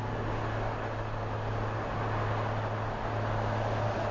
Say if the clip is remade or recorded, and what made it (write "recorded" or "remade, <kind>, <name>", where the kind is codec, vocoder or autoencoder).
recorded